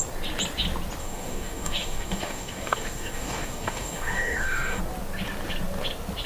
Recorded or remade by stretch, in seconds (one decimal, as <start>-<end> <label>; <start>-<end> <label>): 0.0-1.0 recorded; 1.0-4.8 remade; 4.8-6.3 recorded